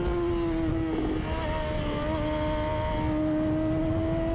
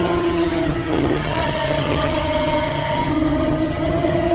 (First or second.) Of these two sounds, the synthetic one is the second